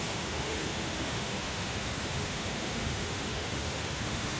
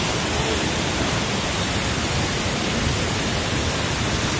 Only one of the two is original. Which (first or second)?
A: second